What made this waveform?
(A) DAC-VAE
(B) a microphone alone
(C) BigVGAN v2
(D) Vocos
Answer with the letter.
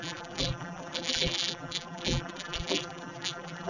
C